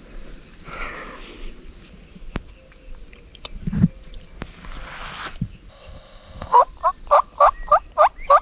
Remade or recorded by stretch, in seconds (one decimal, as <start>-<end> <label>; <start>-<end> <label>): 0.0-5.7 recorded; 5.7-6.6 remade; 6.6-8.4 recorded